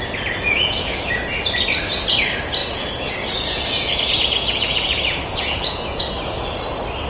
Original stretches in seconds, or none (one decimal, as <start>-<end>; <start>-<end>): 0.0-0.4; 1.2-2.6; 6.0-7.1